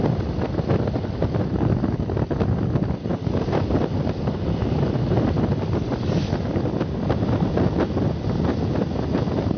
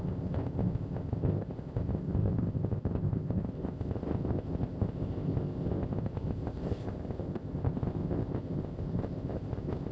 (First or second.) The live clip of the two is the first